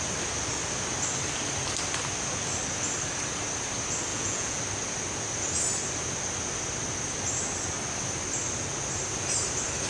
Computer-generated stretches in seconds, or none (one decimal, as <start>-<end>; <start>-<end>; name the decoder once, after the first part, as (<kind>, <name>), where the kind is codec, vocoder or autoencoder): 4.1-4.6 (vocoder, Vocos)